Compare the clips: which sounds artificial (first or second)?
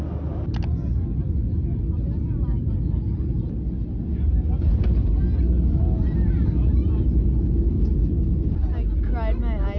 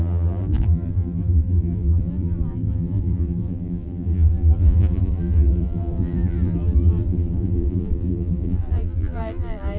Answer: second